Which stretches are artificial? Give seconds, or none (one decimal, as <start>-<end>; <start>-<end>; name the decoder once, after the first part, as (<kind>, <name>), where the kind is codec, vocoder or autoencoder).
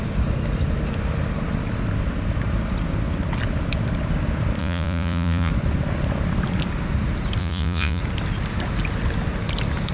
4.6-5.5 (vocoder, Vocos); 7.4-8.0